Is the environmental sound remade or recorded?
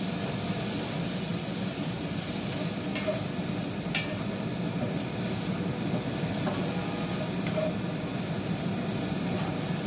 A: recorded